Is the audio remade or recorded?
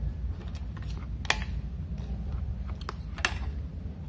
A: recorded